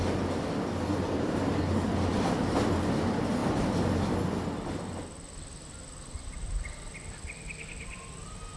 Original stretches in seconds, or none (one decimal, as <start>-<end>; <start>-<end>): 0.0-8.6

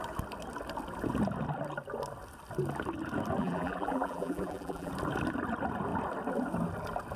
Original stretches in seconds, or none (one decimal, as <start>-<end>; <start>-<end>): 0.0-3.4; 4.9-7.2

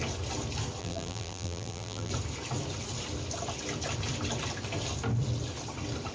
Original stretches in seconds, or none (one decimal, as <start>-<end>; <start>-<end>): 0.0-0.8; 2.1-6.1

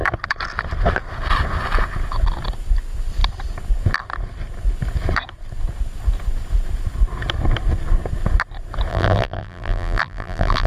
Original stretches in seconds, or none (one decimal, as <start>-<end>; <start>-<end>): 0.0-8.9

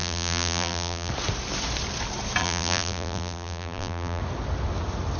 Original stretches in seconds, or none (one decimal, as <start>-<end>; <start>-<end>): 1.1-2.4; 4.2-5.2

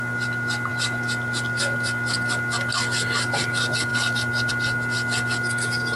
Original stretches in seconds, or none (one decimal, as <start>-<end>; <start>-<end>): 0.0-0.7; 1.6-6.0